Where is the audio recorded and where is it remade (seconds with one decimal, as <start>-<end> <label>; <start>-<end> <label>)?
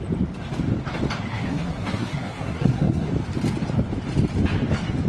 0.0-1.3 recorded; 1.3-3.1 remade; 3.1-5.1 recorded